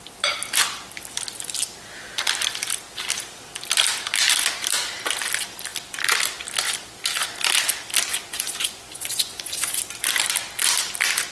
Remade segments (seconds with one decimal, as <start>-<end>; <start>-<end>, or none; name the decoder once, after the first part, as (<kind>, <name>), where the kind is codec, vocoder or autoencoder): 8.1-9.8 (vocoder, Vocos)